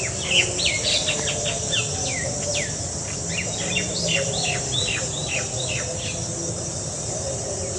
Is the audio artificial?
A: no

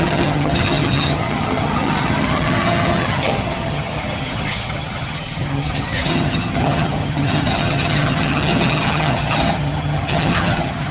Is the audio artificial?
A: yes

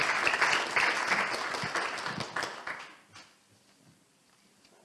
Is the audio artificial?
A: no